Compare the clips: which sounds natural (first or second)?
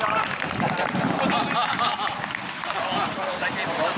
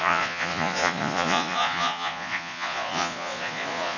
first